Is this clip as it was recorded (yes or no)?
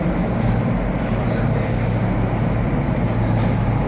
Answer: yes